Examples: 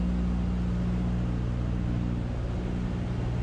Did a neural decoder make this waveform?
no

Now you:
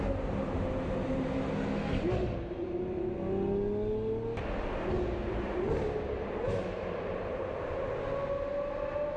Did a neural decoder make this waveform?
no